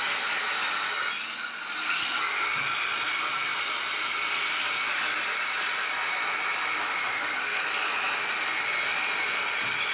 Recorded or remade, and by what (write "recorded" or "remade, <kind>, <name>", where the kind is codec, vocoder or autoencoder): recorded